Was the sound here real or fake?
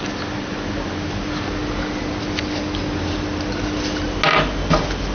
real